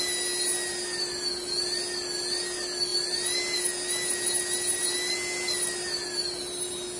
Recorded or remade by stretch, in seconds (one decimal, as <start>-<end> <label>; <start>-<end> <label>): 0.0-7.0 recorded